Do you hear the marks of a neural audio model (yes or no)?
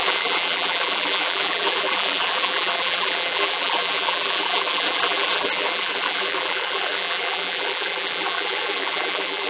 yes